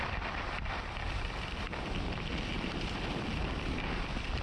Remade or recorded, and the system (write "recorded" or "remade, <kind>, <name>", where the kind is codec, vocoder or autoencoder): recorded